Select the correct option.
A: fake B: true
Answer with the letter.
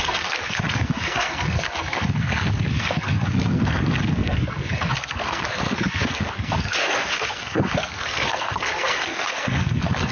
A